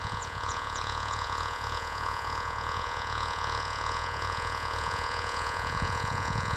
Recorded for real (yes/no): no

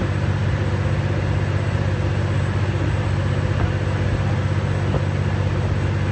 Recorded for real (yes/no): yes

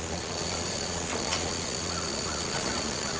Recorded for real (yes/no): no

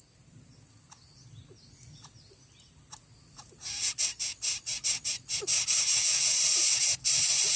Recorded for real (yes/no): yes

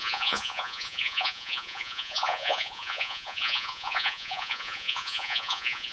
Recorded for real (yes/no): no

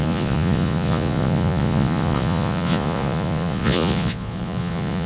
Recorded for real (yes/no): no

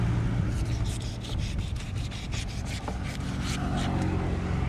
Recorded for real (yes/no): yes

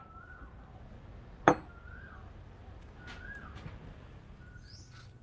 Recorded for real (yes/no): yes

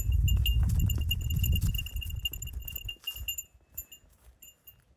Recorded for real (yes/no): yes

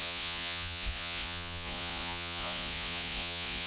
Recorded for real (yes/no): no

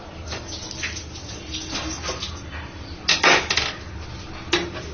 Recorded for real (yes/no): yes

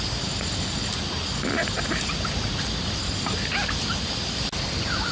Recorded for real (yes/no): yes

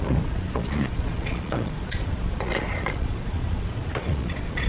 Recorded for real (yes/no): no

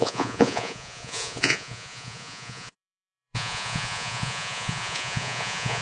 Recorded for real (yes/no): no